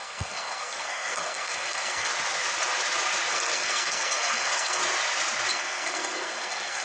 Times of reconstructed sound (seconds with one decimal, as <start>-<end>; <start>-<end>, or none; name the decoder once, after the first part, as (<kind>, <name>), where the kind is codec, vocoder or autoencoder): 0.0-2.1 (codec, SNAC); 3.3-4.8; 5.5-6.8